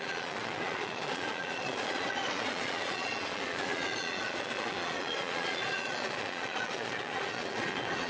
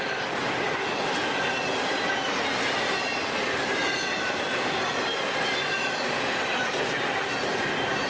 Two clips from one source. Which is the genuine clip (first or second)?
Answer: second